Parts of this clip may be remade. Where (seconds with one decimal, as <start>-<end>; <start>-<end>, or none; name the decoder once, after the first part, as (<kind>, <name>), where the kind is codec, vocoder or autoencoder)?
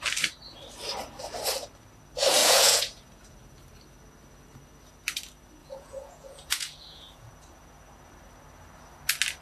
2.4-3.0 (vocoder, Vocos); 5.6-7.3